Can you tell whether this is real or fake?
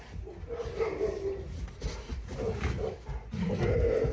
real